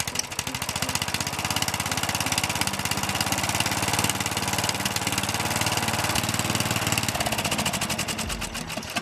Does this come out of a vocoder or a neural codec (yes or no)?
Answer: no